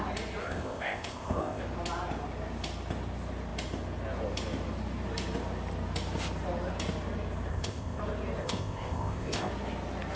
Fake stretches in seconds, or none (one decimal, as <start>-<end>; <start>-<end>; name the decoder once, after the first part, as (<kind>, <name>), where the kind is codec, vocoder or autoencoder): 0.4-1.6 (codec, ZipCodec); 7.5-8.0; 8.4-9.5